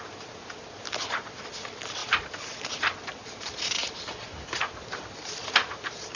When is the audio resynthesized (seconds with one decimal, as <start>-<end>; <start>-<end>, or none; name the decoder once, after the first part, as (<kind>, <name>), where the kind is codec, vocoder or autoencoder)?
none

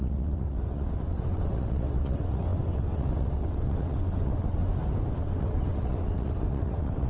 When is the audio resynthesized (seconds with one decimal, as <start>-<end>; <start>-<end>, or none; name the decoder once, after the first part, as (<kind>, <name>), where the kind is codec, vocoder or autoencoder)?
0.0-4.6 (vocoder, WaveNeXt); 5.1-7.1

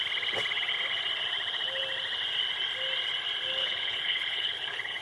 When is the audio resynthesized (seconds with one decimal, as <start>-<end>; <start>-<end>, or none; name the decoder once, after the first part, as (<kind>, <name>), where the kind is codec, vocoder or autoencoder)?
3.6-5.0 (codec, HILCodec)

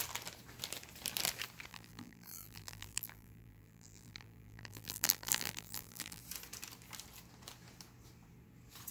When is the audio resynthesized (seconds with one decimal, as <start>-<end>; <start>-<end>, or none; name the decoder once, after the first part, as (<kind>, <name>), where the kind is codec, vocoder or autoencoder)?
1.7-6.2 (vocoder, BigVGAN v2)

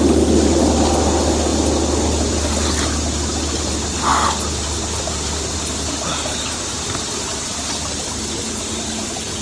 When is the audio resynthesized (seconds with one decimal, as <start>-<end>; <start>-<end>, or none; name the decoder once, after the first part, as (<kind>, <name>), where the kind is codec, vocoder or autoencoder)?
none

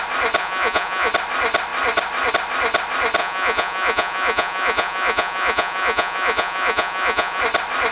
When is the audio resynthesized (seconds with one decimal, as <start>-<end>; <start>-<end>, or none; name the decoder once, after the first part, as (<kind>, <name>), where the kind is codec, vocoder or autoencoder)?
0.4-1.1 (vocoder, Vocos); 3.2-7.4